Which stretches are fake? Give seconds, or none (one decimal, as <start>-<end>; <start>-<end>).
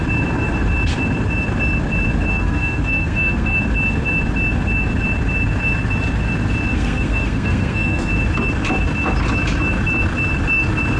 2.3-3.6; 6.7-8.1